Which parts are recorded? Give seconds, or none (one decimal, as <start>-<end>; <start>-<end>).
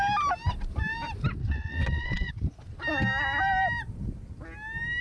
0.0-1.4; 2.3-5.0